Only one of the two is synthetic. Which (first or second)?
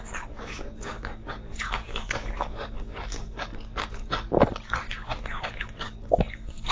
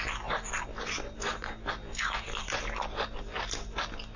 first